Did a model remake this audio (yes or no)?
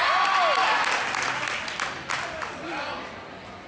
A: no